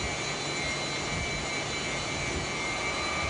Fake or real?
real